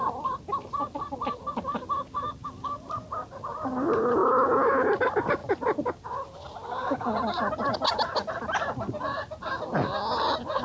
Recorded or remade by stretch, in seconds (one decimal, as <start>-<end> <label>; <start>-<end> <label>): 0.0-10.6 recorded